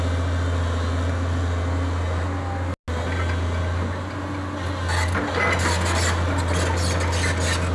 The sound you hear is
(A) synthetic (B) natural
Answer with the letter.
B